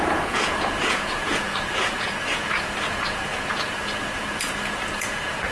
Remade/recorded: remade